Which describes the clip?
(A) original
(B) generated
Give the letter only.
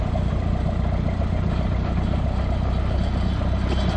A